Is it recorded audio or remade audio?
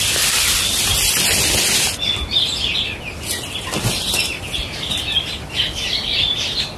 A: recorded